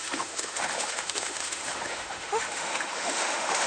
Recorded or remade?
remade